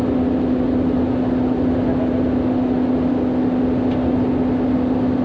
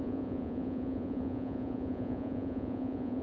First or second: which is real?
first